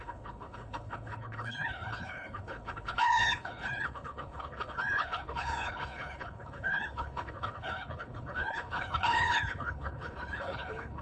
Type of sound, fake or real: fake